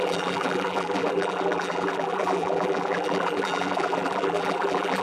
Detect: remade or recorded remade